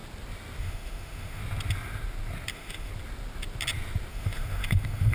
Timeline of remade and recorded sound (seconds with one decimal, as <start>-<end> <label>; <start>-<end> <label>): 0.0-0.6 recorded; 0.6-1.4 remade; 1.4-2.5 recorded; 2.5-2.9 remade; 2.9-4.1 recorded; 4.1-5.1 remade